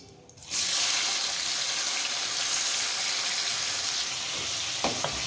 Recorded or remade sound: recorded